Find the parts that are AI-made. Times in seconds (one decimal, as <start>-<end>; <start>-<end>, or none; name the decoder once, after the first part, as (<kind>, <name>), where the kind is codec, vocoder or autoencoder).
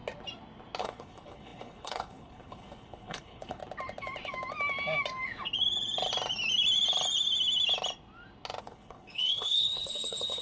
0.8-3.6 (codec, HILCodec); 8.6-10.4